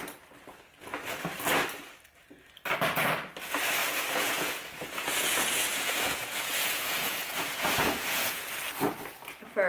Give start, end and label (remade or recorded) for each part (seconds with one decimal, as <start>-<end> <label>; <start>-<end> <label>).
0.0-3.8 recorded; 3.8-8.5 remade; 8.5-9.7 recorded